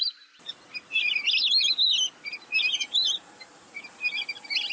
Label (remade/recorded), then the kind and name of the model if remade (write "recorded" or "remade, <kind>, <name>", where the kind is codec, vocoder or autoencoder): recorded